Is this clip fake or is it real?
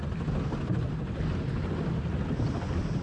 real